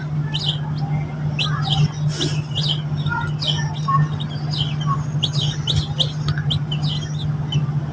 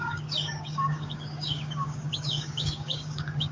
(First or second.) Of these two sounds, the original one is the first